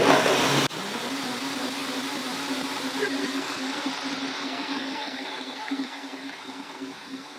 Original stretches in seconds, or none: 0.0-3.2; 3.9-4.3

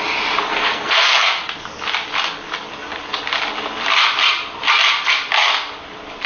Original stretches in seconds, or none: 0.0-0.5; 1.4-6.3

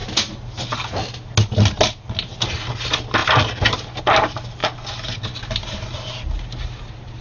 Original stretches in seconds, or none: 0.0-7.2

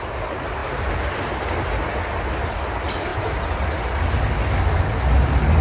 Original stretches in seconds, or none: 0.0-5.6

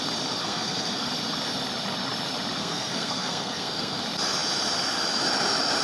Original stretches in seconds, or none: 0.0-0.4; 1.1-2.6; 4.0-5.8

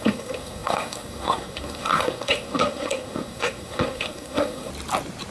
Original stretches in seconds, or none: 4.7-5.3